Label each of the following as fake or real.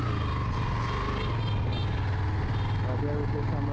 real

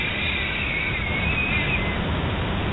fake